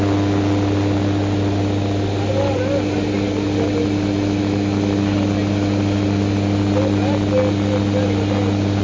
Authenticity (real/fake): real